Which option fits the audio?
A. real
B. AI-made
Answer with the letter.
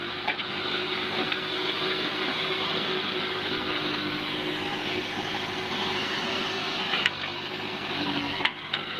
B